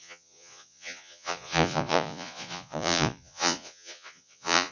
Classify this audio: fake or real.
fake